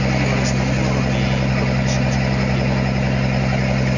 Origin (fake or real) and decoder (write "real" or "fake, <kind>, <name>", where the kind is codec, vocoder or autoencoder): real